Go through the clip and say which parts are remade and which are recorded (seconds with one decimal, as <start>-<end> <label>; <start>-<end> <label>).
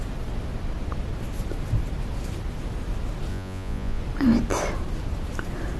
0.0-3.3 recorded; 3.3-4.0 remade; 4.0-5.8 recorded